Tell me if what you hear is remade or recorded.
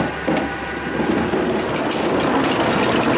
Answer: recorded